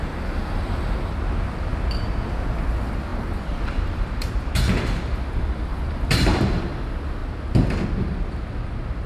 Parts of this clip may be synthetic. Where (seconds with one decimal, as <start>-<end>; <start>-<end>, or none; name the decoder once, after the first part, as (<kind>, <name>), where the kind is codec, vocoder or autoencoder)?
3.1-4.3 (vocoder, BigVGAN v2); 5.7-6.6